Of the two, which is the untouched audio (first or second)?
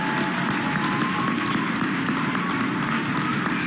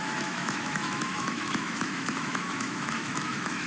first